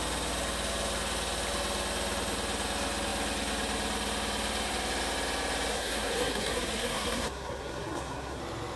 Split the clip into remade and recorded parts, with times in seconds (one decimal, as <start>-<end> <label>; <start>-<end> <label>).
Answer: 0.0-5.7 recorded; 5.7-8.4 remade; 8.4-8.8 recorded